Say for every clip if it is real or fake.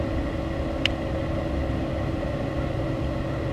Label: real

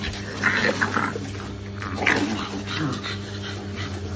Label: real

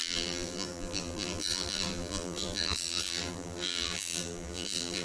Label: fake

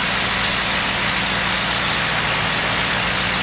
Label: real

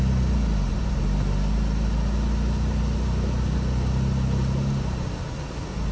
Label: real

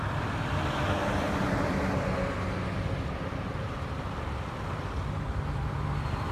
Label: fake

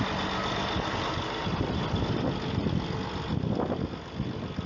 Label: real